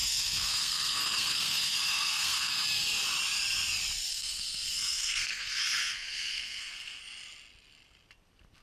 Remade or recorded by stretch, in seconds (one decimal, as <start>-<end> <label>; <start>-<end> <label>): 0.0-2.5 remade; 2.5-4.1 recorded; 4.1-7.0 remade; 7.0-8.6 recorded